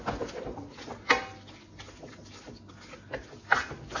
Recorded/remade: recorded